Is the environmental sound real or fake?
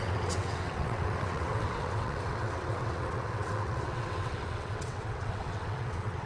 fake